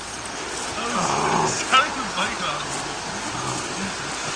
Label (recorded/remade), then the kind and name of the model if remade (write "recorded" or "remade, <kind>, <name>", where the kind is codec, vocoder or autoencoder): recorded